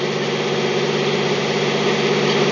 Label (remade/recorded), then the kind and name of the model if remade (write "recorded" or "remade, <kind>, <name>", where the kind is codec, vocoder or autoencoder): recorded